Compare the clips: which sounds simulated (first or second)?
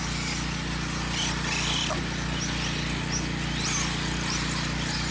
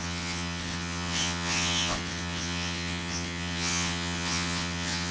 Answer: second